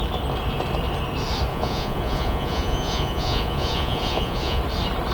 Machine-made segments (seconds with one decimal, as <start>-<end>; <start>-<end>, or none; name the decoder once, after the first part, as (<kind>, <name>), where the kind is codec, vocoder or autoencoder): 1.5-4.6 (vocoder, Vocos)